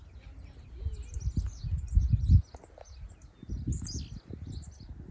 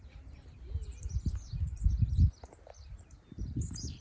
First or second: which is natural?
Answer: first